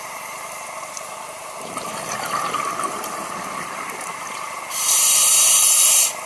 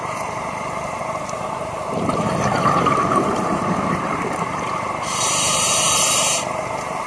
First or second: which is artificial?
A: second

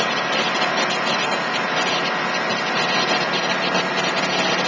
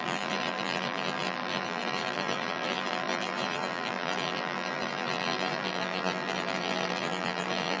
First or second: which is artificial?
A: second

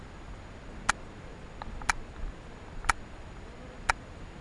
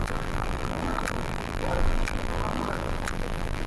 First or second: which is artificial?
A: second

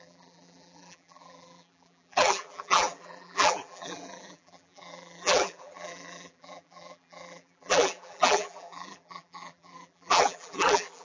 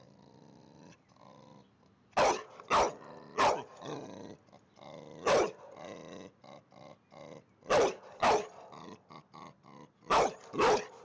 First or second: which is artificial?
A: first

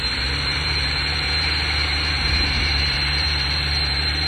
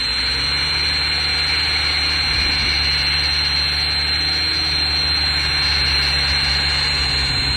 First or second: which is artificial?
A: first